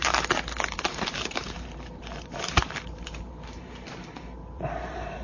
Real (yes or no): no